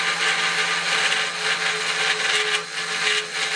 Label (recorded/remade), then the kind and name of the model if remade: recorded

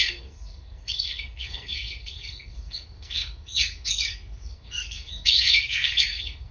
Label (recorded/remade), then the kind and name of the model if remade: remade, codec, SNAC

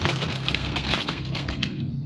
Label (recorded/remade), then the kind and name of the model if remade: remade, codec, SNAC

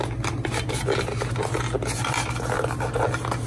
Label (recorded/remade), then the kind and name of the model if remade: recorded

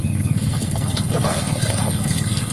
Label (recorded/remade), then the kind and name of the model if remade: remade, codec, SNAC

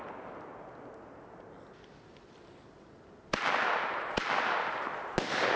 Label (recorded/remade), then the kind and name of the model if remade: recorded